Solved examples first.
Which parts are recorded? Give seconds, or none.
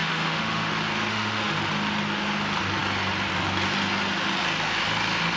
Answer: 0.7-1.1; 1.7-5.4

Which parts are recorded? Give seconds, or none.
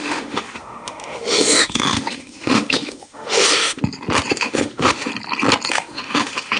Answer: 3.8-4.3; 5.1-5.7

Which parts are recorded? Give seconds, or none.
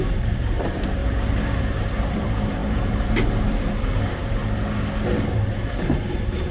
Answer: 1.0-1.6; 4.4-5.3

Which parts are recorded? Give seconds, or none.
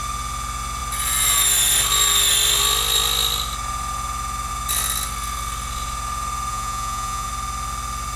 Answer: 0.0-6.5; 7.3-8.2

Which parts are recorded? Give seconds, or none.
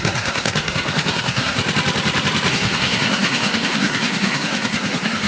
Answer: 1.6-2.5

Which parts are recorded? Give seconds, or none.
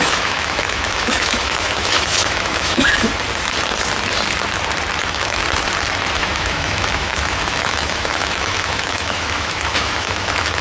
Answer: 3.1-5.0; 5.4-6.1